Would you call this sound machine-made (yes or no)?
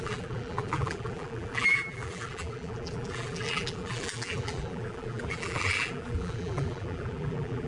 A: yes